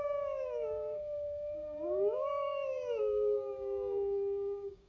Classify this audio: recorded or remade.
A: remade